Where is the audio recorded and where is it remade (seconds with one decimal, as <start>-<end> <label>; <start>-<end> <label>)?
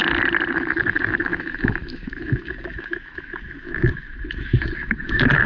0.0-0.5 recorded; 0.5-5.5 remade